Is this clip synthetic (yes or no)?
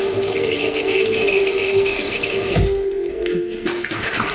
yes